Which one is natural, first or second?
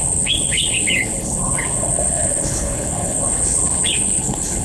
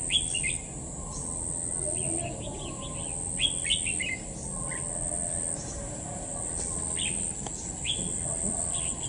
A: second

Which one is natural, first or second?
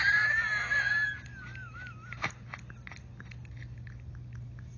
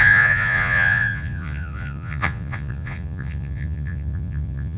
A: first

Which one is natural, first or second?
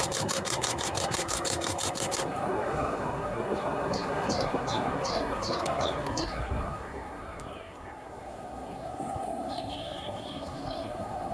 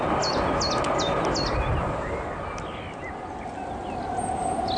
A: second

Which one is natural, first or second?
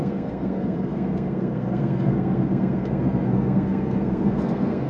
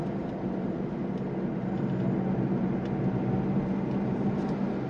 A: second